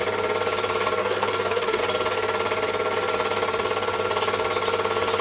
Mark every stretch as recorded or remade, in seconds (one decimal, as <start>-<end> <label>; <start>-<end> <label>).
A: 0.0-1.0 recorded; 1.0-1.8 remade; 1.8-5.2 recorded